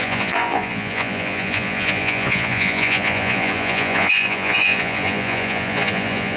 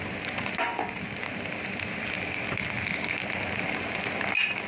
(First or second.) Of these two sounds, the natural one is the second